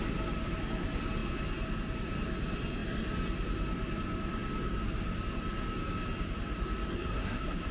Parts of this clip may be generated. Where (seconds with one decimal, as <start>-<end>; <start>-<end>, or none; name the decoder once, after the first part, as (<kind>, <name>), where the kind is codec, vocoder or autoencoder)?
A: 6.9-7.7 (codec, SNAC)